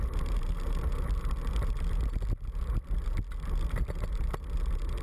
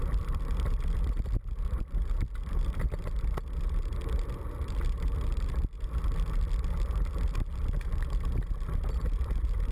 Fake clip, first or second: second